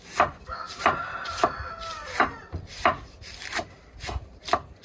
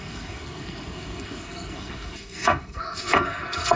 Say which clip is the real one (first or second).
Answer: first